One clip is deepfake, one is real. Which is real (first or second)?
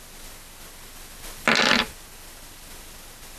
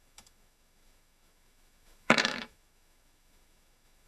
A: first